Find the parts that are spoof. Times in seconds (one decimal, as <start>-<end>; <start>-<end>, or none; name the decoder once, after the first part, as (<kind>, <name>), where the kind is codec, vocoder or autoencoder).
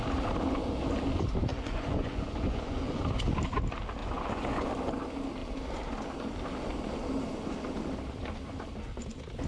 1.5-3.0 (vocoder, Vocos); 4.0-4.7